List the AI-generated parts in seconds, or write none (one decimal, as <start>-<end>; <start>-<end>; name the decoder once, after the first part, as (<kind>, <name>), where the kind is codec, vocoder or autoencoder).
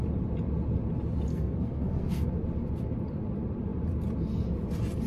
1.3-2.3 (codec, SNAC)